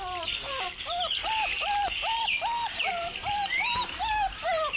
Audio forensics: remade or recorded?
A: remade